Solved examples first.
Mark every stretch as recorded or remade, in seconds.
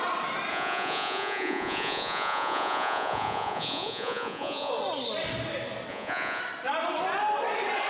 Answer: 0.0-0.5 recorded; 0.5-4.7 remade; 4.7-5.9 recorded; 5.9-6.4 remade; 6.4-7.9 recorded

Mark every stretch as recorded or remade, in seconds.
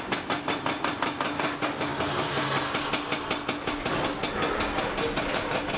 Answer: 0.0-5.8 recorded